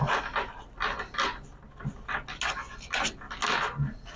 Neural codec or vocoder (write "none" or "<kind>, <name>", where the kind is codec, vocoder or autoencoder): none